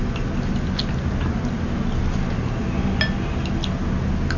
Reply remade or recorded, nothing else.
recorded